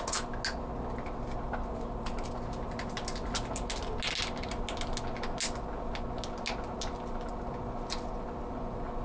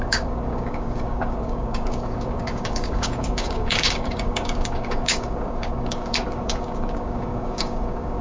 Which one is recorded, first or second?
first